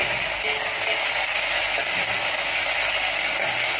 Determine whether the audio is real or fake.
real